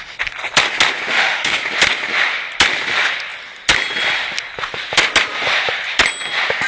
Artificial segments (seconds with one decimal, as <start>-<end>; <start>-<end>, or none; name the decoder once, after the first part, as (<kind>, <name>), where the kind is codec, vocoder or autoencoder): 1.1-1.6 (autoencoder, DAC-VAE)